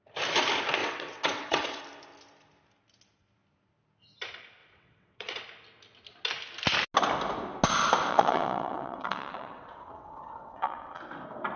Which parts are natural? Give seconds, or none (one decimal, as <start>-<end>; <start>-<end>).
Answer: 0.0-0.8; 1.8-4.6; 5.4-8.1; 11.0-11.6